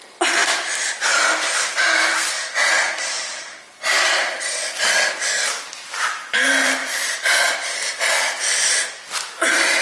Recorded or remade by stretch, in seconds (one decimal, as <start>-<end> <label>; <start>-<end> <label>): 0.0-6.8 recorded; 6.8-7.5 remade; 7.5-9.8 recorded